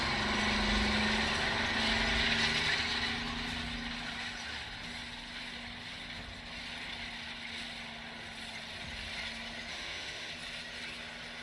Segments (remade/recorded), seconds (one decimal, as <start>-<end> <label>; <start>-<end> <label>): 0.0-9.7 recorded; 9.7-10.3 remade; 10.3-11.4 recorded